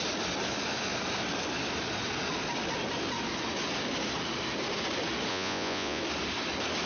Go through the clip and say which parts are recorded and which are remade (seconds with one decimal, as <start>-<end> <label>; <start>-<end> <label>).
0.0-5.3 recorded; 5.3-6.0 remade; 6.0-6.9 recorded